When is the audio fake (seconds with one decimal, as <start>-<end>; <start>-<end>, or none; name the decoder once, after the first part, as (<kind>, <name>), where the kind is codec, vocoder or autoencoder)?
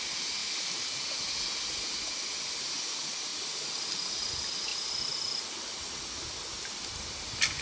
none